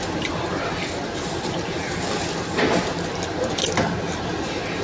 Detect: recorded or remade recorded